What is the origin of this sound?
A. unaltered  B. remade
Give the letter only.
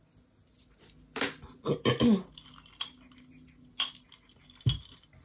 A